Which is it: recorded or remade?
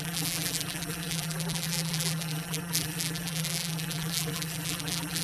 remade